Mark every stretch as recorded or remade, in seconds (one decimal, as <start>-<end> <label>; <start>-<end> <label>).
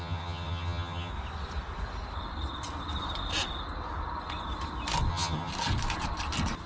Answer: 0.0-1.1 remade; 1.1-5.1 recorded; 5.1-5.5 remade; 5.5-6.7 recorded